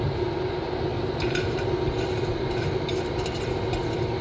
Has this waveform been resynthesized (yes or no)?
no